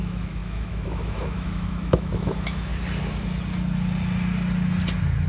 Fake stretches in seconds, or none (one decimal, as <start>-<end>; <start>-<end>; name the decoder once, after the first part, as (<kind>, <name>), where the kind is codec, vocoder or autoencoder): 0.0-2.7 (autoencoder, DAC-VAE)